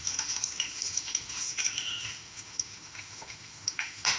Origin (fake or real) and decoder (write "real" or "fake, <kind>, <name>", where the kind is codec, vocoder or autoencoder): fake, autoencoder, DAC-VAE